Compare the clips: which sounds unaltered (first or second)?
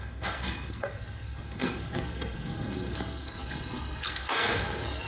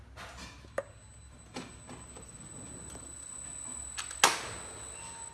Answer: second